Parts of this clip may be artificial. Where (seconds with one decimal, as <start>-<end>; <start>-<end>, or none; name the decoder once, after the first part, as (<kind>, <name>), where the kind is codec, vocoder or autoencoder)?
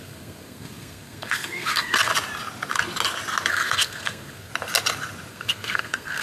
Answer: 0.0-2.1 (codec, SNAC); 3.5-4.5; 5.3-6.2